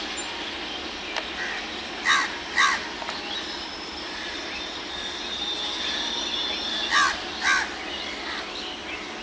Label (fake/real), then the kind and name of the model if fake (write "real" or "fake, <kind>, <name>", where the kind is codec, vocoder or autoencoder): real